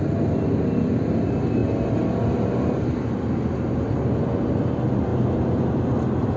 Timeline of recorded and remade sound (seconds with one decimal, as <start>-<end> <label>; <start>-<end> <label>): 0.0-6.4 recorded